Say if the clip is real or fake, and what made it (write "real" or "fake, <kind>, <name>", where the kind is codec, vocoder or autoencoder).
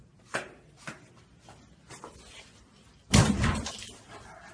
real